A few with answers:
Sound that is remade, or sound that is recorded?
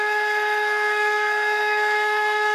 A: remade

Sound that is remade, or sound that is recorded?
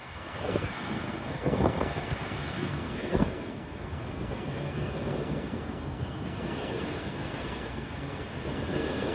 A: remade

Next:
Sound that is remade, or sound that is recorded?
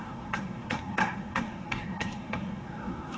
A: remade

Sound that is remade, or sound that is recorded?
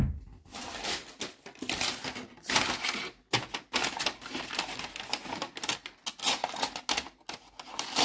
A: recorded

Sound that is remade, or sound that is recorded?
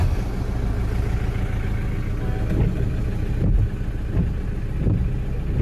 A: recorded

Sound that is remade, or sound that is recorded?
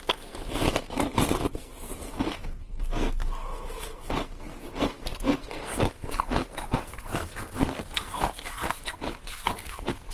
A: remade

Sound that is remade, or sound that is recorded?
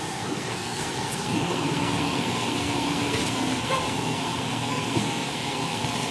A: remade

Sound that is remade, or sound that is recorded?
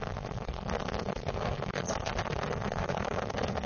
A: remade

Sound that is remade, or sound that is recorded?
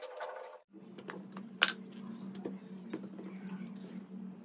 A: recorded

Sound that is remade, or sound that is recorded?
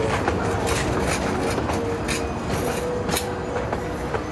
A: recorded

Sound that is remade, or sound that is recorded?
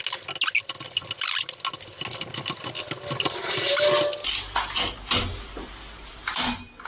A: recorded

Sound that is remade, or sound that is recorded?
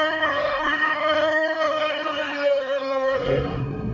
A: remade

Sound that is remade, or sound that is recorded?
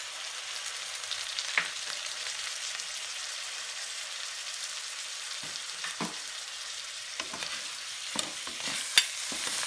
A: recorded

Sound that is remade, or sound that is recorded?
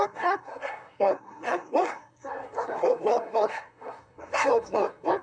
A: remade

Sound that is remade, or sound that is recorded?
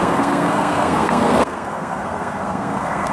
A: remade